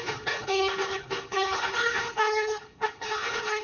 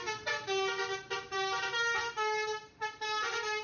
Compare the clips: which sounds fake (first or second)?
first